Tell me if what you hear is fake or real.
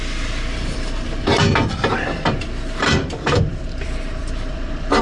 fake